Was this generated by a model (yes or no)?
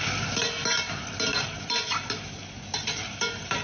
no